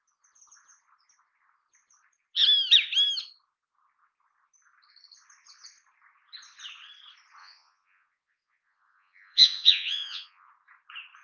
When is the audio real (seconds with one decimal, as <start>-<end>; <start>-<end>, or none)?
0.0-7.4; 10.5-11.2